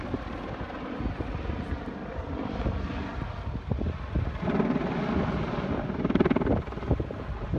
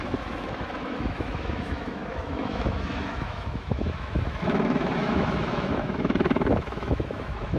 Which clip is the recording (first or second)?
first